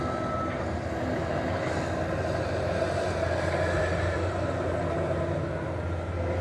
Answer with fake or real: real